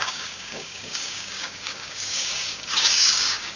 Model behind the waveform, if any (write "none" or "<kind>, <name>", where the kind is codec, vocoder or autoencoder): codec, DAC